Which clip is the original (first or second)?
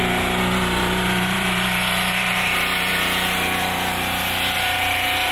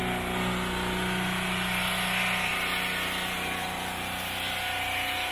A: second